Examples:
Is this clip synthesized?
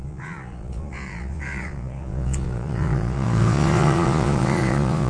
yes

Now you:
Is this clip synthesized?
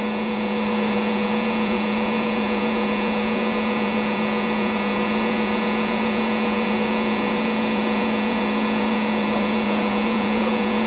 yes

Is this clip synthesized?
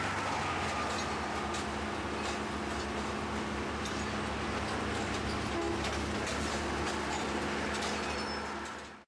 no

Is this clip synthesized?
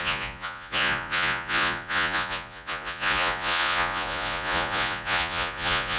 yes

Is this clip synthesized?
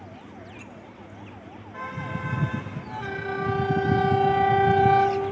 no